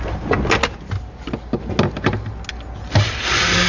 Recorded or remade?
recorded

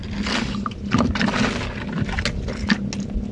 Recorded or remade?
recorded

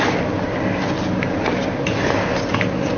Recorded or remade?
recorded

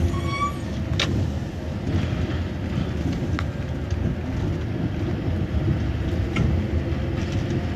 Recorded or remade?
recorded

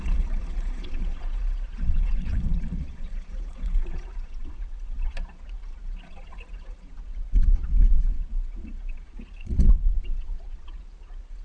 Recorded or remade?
remade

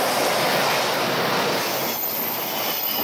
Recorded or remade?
recorded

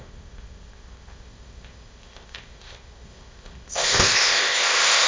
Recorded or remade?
remade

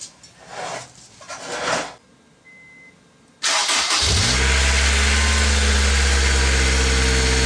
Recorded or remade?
recorded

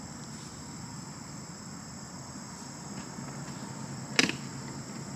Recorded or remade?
recorded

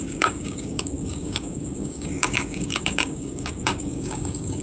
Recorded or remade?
remade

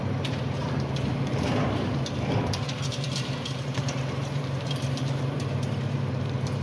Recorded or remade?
remade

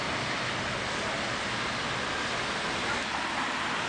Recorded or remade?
recorded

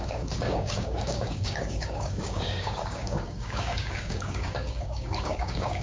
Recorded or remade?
remade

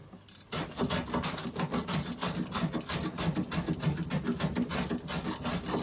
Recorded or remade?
recorded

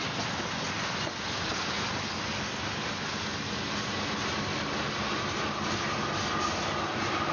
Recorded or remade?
recorded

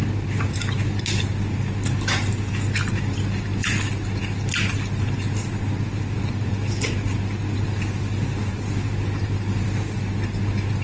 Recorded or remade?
recorded